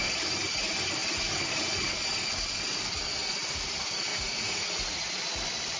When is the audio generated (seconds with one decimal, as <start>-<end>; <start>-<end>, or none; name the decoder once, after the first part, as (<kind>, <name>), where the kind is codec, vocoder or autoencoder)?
4.1-5.2 (vocoder, Vocos)